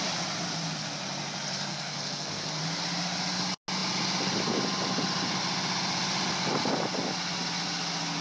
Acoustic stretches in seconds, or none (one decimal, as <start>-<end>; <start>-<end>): 0.0-1.7; 2.6-8.2